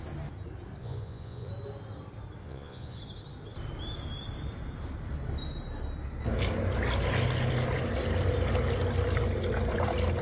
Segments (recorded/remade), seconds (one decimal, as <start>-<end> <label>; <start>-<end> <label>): 0.0-0.8 recorded; 0.8-1.5 remade; 1.5-2.4 recorded; 2.4-3.0 remade; 3.0-10.2 recorded